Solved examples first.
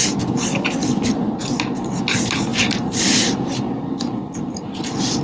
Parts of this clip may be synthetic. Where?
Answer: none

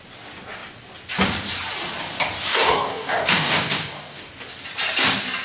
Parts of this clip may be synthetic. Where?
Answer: 2.5-4.3 (codec, DAC)

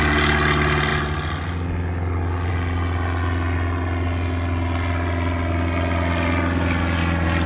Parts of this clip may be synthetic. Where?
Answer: none

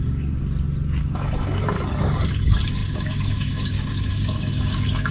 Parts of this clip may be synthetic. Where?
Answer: 0.0-0.4 (codec, DAC); 1.0-5.1

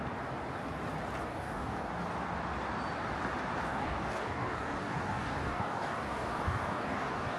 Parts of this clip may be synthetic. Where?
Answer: 1.3-1.9 (codec, DAC); 3.7-7.4

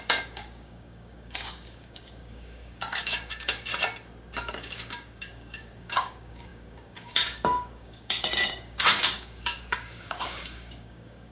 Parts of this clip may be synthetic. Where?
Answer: 0.0-3.7 (codec, DAC); 4.4-11.3

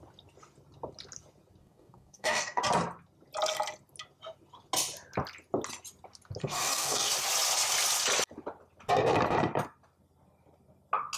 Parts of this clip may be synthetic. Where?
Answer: 1.6-2.6 (codec, DAC); 6.4-7.1